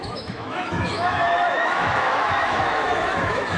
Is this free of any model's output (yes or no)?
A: no